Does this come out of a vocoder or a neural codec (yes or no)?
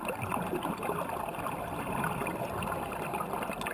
no